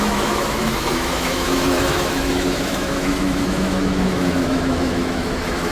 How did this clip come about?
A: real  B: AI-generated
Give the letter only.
B